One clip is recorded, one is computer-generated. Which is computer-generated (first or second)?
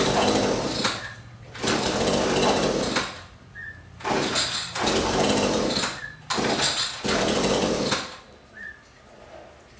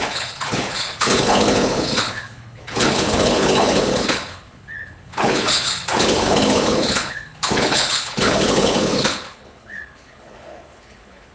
second